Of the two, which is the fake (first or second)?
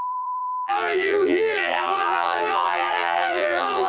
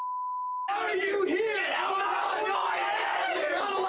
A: first